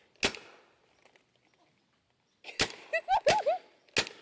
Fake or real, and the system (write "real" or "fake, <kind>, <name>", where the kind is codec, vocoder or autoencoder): real